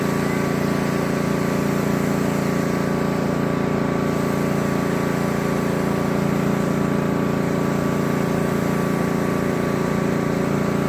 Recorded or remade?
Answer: recorded